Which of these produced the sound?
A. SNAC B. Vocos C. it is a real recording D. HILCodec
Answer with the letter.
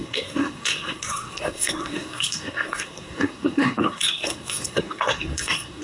A